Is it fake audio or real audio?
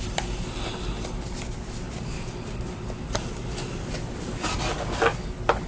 real